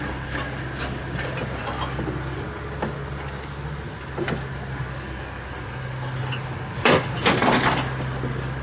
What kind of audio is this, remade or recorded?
recorded